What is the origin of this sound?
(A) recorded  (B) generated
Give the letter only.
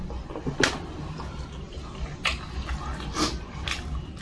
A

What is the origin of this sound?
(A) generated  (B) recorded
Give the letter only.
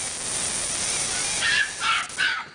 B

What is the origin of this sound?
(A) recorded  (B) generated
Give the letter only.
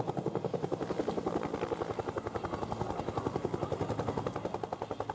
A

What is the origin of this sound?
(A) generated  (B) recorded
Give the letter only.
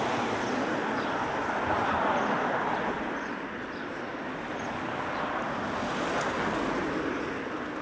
B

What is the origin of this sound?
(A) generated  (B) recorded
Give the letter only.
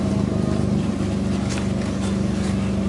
B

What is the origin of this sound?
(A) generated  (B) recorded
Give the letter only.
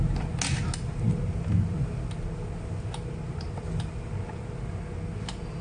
B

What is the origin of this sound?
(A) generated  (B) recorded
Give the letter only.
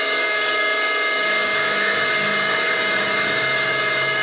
A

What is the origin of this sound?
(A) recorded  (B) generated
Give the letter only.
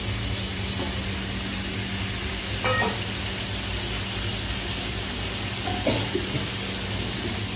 A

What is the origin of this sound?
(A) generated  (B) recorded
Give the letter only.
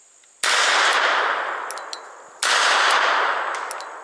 B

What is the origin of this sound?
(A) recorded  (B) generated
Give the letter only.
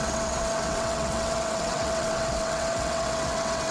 B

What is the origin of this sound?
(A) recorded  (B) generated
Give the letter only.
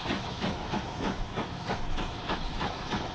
B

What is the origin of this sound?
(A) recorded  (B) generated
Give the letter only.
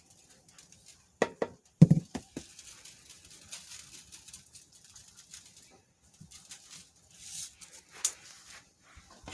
A